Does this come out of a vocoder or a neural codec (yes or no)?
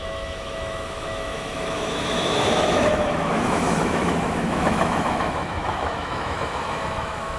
yes